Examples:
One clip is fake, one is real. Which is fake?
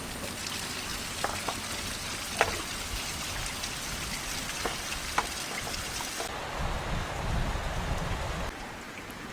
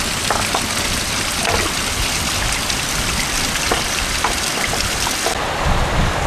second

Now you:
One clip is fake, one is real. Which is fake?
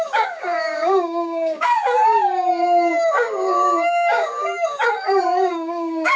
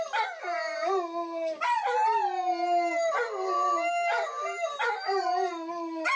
first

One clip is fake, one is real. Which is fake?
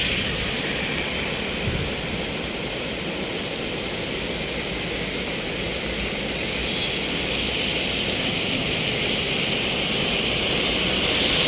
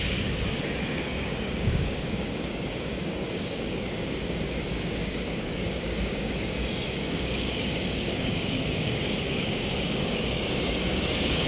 second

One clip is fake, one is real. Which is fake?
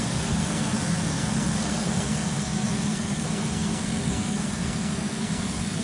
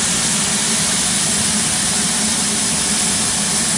first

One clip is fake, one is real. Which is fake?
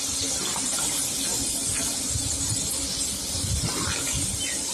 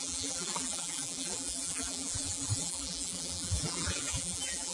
second